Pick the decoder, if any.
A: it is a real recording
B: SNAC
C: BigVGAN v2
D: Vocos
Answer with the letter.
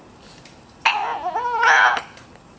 A